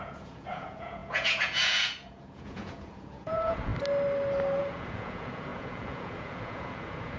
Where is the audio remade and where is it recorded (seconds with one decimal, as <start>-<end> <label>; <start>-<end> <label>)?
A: 0.0-3.7 remade; 3.7-4.6 recorded; 4.6-7.2 remade